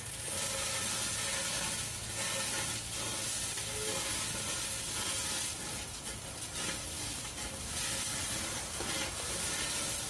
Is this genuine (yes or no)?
yes